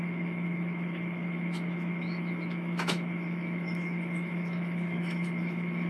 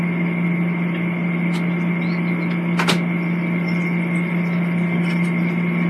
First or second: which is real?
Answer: second